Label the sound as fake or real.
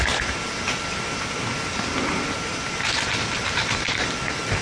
real